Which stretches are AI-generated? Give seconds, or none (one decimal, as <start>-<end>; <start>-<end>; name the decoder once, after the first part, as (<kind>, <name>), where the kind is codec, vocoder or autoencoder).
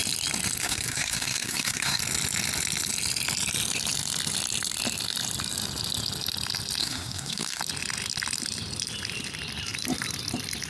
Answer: 0.6-2.0 (codec, SNAC); 6.8-7.6